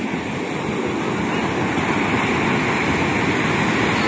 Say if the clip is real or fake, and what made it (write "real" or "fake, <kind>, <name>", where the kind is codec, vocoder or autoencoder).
real